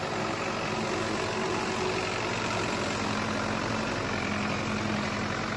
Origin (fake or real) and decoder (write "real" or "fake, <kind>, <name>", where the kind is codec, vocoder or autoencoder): real